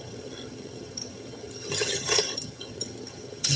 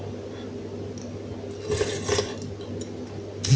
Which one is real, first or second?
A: second